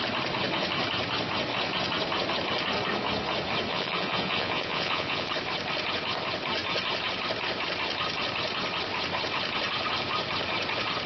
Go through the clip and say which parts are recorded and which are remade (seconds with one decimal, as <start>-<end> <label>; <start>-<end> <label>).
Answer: 0.0-3.7 recorded; 3.7-5.3 remade; 5.3-11.1 recorded